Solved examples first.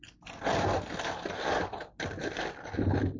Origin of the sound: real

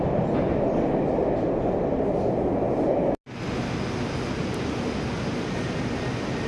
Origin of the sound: real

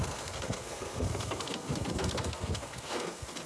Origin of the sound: fake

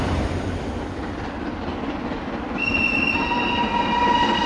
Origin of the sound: real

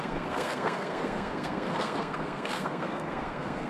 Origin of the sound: fake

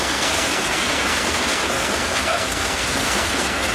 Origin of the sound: fake